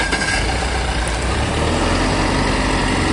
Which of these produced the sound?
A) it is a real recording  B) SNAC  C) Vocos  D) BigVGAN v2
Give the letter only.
A